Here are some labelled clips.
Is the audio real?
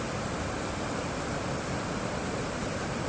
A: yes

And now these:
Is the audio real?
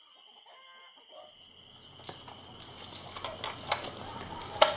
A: yes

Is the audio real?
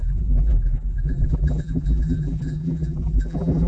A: no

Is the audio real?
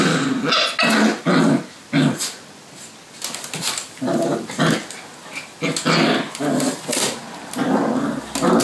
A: yes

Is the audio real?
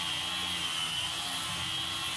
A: yes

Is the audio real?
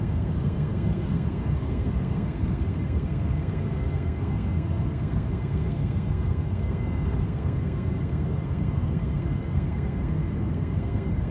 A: no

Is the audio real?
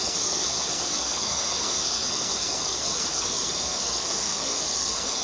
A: no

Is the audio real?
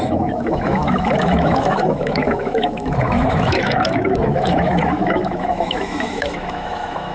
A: no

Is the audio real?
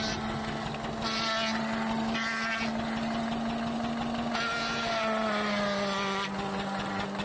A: yes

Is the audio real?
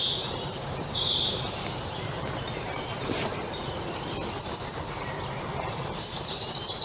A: no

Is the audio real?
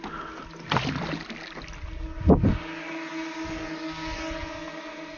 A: yes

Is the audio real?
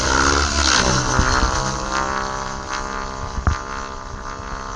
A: yes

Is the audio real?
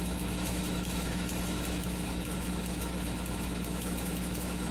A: no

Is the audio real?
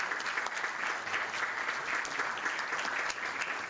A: yes